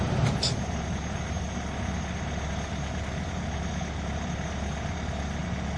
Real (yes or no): yes